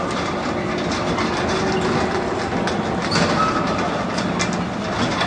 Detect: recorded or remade recorded